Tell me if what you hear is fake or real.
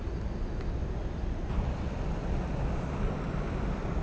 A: real